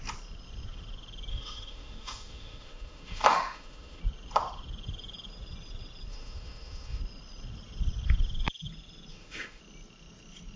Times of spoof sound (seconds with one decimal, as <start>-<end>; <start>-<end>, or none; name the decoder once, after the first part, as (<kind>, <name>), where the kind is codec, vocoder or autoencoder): 1.3-4.0 (autoencoder, DAC-VAE); 6.1-7.0; 9.1-9.6